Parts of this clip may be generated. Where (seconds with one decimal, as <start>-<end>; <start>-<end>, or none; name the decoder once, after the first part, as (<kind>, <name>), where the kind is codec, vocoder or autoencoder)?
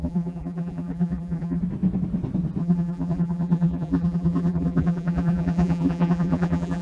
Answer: 0.0-1.6 (vocoder, BigVGAN v2); 2.6-6.8